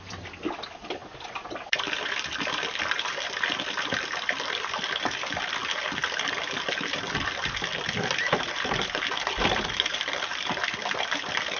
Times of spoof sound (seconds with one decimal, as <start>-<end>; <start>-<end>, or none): none